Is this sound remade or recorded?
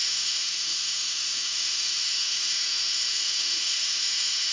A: remade